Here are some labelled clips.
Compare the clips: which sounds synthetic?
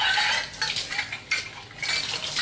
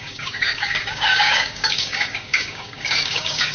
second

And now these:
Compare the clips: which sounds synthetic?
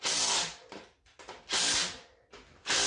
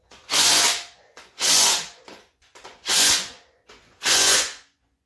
second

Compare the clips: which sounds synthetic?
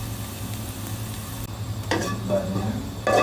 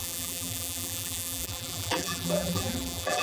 second